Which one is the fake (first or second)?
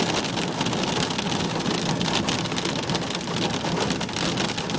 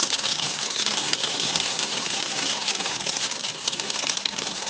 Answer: second